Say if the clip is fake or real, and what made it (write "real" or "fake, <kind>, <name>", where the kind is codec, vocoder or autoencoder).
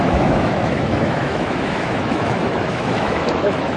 fake, autoencoder, DAC-VAE